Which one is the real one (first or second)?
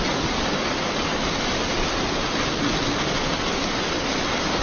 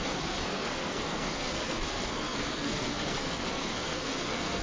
first